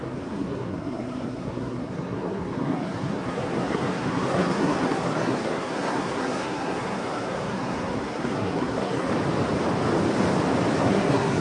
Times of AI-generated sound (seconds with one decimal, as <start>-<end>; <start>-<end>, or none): 0.0-9.1; 10.8-11.4